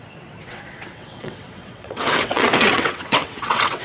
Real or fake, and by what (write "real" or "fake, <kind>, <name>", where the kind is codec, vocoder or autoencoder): fake, vocoder, WaveNeXt